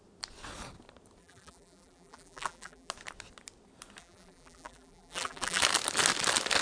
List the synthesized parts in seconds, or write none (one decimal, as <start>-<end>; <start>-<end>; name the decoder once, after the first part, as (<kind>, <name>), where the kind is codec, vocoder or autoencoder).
1.2-2.9 (vocoder, BigVGAN v2); 4.0-5.6